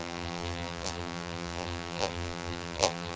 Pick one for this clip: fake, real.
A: fake